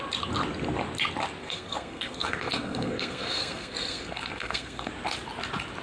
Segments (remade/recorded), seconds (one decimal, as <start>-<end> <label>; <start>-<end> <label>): 0.0-1.4 recorded; 1.4-4.9 remade; 4.9-5.8 recorded